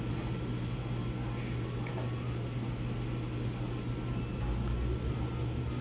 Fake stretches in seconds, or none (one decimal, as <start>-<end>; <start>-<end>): none